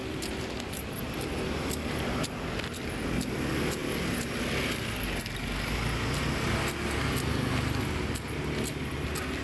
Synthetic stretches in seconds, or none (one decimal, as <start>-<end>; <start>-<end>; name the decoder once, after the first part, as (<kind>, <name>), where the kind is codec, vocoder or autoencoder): none